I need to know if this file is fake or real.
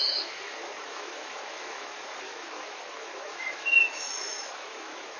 fake